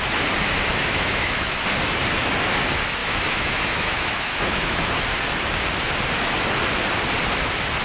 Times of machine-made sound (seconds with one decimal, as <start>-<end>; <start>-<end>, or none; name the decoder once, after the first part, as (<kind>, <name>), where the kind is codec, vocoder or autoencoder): 0.7-1.6 (autoencoder, DAC-VAE); 3.0-4.9